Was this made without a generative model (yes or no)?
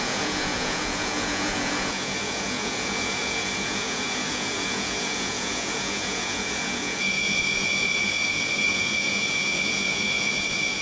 no